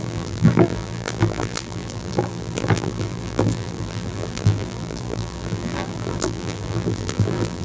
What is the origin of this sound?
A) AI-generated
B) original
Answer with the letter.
A